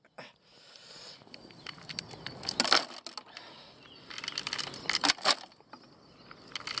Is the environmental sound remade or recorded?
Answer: recorded